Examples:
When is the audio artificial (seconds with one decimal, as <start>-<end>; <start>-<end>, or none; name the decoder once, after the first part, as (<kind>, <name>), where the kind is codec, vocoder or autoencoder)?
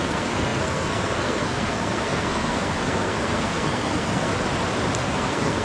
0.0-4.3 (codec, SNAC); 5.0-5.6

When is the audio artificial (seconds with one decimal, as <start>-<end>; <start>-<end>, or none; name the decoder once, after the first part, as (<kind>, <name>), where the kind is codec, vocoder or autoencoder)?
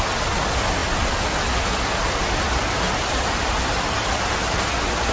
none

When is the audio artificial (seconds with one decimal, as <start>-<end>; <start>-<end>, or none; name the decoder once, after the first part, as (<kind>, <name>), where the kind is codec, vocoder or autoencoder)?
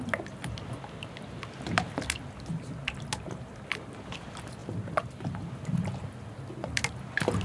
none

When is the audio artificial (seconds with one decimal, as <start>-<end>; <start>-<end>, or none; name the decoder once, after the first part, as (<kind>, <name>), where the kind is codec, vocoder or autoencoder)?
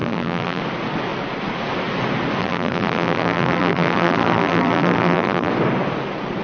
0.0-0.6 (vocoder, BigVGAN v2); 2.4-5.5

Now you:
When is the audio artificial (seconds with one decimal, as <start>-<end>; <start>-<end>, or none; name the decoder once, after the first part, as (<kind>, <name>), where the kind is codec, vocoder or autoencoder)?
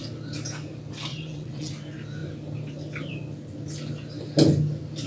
1.1-1.7 (vocoder, WaveNeXt)